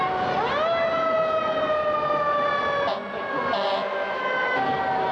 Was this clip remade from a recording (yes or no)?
no